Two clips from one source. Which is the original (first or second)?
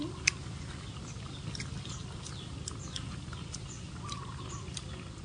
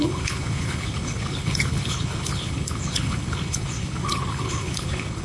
first